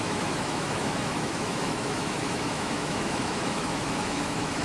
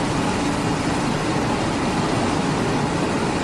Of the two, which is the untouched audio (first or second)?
second